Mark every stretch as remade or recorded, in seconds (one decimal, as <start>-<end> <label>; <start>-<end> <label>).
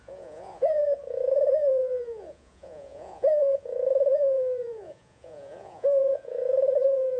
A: 0.0-7.2 remade